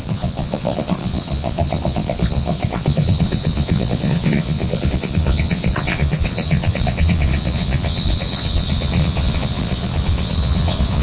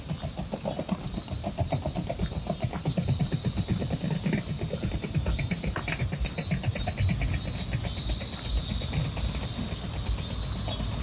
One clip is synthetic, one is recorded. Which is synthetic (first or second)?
first